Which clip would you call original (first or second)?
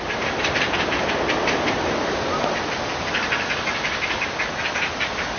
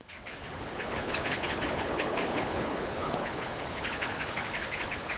first